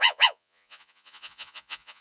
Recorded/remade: remade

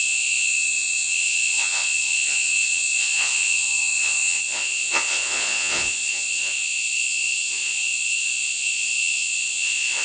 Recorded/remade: remade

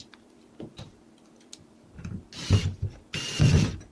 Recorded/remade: recorded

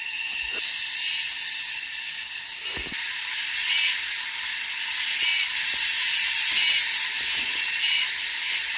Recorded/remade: recorded